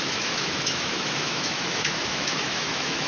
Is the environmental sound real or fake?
fake